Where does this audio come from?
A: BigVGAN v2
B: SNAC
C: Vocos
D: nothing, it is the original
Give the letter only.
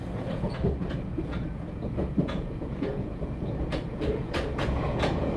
C